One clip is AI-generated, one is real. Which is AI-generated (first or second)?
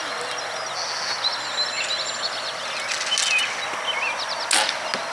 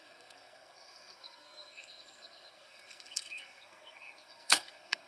second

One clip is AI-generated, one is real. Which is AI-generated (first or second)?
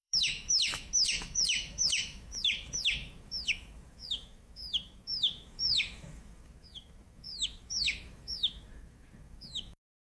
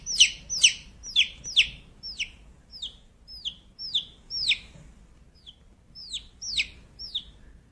first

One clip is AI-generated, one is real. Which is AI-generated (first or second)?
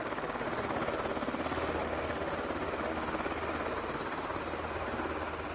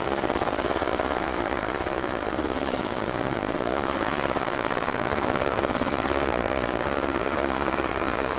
second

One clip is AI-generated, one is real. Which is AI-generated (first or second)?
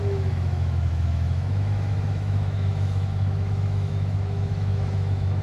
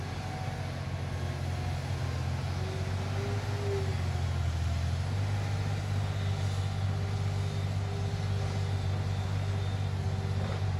first